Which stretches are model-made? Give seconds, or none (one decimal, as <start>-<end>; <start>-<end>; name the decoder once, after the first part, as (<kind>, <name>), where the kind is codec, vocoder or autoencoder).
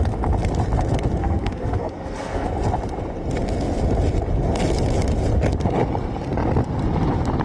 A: 1.2-2.5 (codec, SNAC)